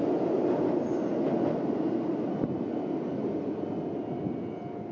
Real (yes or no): yes